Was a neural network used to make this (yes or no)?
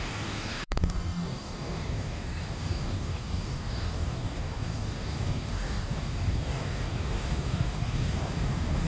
yes